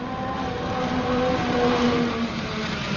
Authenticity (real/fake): fake